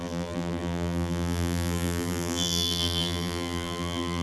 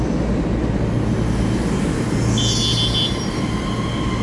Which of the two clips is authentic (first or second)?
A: second